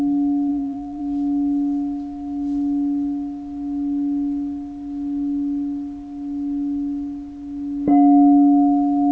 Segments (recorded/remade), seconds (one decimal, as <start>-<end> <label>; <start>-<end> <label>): 0.0-0.5 recorded; 0.5-1.0 remade; 1.0-9.1 recorded